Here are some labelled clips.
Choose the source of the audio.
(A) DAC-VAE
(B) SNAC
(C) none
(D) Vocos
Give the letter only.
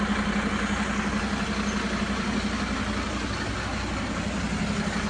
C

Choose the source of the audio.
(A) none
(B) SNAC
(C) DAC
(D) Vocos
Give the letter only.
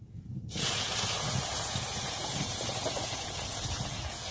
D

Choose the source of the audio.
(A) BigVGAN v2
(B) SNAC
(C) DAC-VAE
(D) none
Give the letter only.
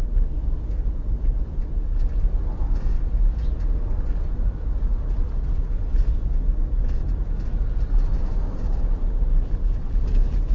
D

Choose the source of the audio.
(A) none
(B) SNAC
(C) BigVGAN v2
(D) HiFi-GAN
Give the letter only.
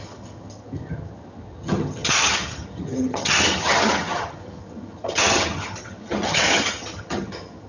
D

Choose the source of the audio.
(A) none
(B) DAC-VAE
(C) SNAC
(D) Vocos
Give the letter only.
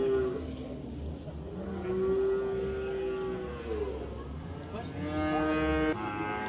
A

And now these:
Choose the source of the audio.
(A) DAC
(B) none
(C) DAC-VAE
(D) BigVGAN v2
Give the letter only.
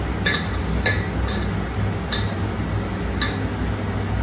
B